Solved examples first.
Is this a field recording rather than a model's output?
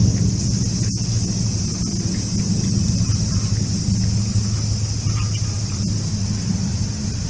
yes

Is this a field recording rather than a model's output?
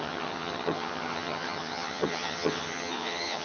no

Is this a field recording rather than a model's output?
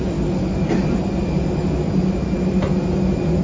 yes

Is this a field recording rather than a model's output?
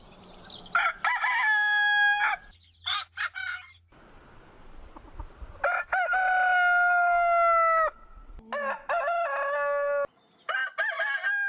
yes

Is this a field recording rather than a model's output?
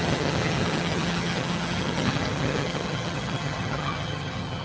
no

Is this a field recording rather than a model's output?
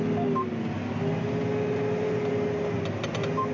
yes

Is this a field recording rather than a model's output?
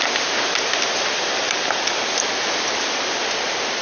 yes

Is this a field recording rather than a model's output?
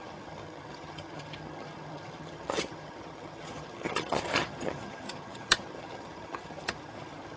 no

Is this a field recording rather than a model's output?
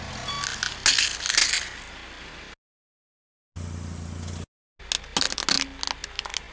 yes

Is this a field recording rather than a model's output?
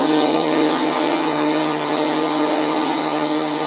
no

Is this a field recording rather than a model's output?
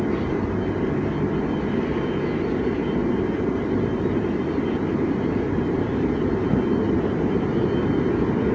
yes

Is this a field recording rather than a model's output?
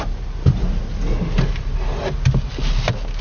yes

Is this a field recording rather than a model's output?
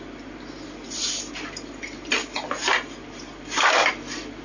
yes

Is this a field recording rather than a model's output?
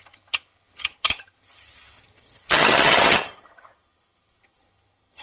no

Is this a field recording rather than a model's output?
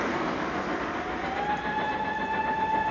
yes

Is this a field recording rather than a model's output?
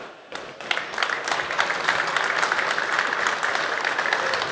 yes